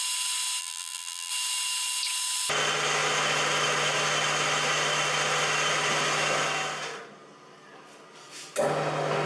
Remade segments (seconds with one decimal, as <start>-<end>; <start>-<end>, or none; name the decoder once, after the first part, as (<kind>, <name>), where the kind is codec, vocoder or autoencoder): 0.6-1.3 (vocoder, BigVGAN v2)